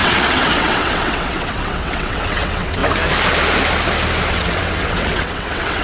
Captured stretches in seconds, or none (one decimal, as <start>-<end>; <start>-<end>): 2.8-4.3